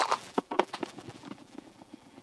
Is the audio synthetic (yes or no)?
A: yes